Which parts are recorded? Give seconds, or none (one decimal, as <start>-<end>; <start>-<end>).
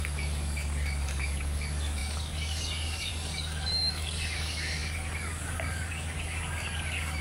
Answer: none